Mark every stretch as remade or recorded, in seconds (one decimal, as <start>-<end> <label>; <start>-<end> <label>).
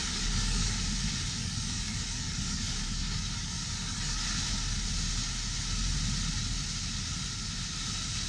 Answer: 0.0-0.8 remade; 0.8-1.4 recorded; 1.4-4.2 remade; 4.2-8.3 recorded